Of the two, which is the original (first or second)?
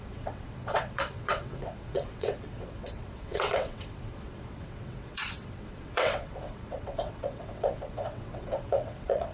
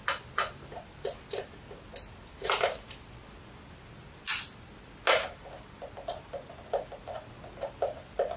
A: second